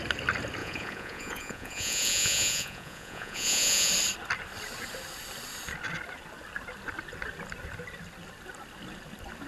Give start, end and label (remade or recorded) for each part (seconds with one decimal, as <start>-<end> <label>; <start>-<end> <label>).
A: 0.0-0.6 recorded; 0.6-3.9 remade; 3.9-9.5 recorded